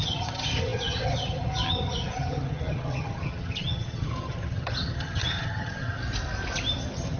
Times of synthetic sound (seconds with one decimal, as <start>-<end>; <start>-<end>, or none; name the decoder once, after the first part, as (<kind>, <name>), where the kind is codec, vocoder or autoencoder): 0.0-6.0 (vocoder, HiFi-GAN); 6.8-7.2